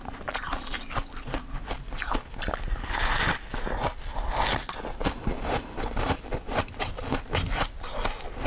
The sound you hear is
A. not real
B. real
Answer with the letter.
B